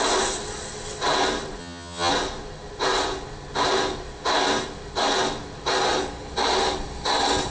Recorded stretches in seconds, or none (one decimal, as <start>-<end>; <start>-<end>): 0.0-1.6; 2.1-7.5